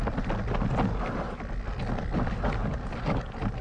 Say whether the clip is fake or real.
real